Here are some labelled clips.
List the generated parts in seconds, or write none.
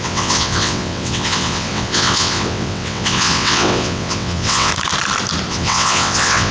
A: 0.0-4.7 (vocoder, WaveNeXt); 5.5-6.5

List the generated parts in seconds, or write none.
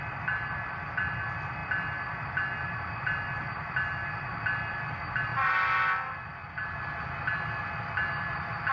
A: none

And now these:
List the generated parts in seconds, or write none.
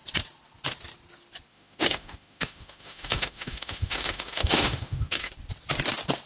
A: 1.5-5.3 (autoencoder, DAC-VAE)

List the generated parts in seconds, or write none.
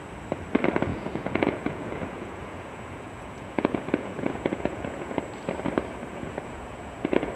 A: 0.9-5.2 (vocoder, Vocos); 6.1-7.3